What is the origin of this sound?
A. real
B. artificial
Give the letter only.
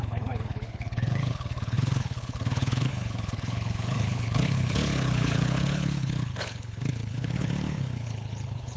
B